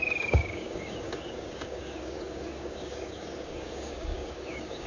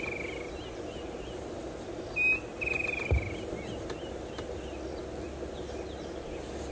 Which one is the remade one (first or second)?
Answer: first